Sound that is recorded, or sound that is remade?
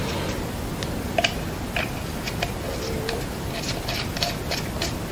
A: recorded